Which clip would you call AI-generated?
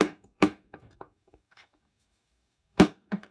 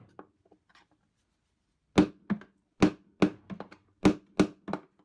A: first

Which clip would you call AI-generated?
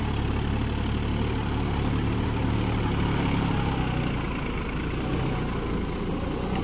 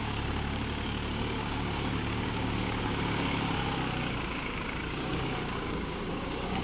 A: second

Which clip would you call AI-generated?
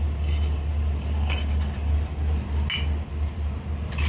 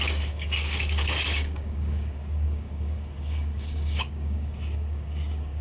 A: second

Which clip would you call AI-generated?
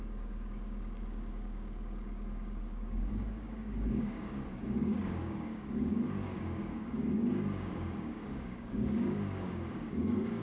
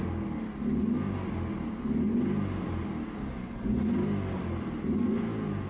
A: first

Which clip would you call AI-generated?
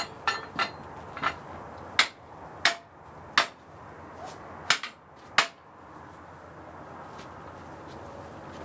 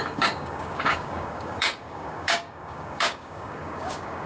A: second